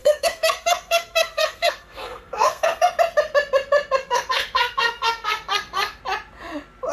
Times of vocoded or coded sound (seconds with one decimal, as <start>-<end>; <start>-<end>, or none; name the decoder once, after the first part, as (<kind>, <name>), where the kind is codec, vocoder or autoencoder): 0.0-2.9 (codec, SNAC); 4.0-6.0

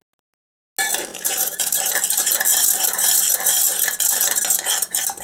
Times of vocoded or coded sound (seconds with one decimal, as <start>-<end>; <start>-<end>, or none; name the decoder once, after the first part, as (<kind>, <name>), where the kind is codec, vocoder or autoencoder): 1.1-1.9 (vocoder, BigVGAN v2); 2.5-3.2

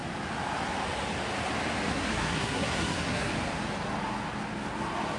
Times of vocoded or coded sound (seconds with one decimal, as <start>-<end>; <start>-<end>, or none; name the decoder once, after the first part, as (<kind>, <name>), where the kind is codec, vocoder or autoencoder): 1.9-3.3 (codec, SNAC)

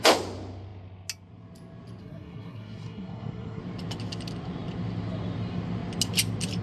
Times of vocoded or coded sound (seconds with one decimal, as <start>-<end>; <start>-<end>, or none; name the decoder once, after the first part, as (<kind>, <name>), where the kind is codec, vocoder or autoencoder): 2.0-3.6 (codec, SNAC)

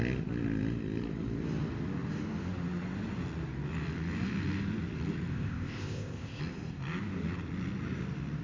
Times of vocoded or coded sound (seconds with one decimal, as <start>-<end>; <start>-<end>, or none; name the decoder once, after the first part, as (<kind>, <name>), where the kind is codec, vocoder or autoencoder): 5.3-6.4 (codec, ZipCodec)

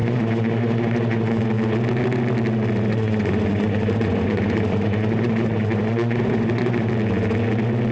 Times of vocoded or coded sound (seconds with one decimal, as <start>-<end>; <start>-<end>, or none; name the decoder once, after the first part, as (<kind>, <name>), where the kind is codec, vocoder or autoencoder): 0.0-1.4 (vocoder, Vocos); 2.9-6.9

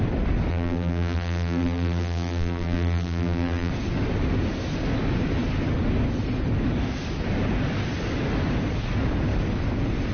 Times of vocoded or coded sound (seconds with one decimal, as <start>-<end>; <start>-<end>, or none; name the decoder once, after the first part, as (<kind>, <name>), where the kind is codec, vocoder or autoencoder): 0.5-3.7 (vocoder, BigVGAN v2)

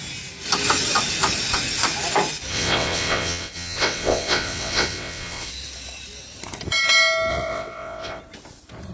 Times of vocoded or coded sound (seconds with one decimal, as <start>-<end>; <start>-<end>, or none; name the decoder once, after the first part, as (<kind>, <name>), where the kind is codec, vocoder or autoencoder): 2.5-5.5 (vocoder, WaveNeXt); 7.3-8.2